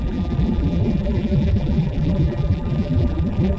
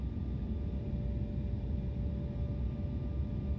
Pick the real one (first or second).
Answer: second